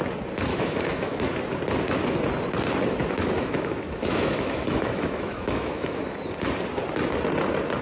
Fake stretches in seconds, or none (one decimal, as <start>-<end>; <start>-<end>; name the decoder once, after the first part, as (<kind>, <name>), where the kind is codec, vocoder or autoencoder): 0.5-1.2 (autoencoder, DAC-VAE); 3.2-6.2